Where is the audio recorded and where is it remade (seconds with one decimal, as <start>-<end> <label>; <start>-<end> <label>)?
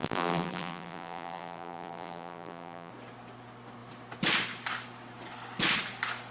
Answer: 0.0-2.9 remade; 2.9-6.3 recorded